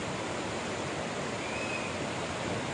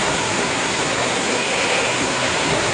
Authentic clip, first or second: first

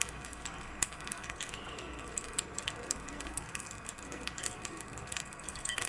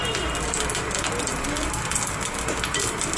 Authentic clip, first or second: second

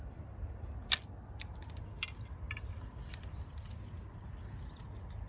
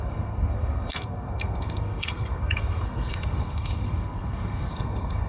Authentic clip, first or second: first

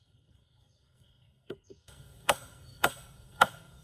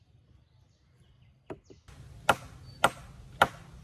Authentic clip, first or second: second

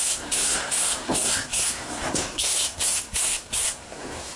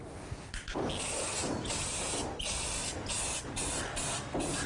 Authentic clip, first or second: second